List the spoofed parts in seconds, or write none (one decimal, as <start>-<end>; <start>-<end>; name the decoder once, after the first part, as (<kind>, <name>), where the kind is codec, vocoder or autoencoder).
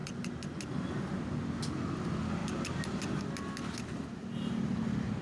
none